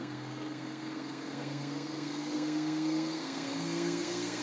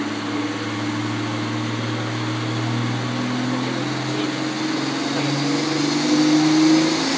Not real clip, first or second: first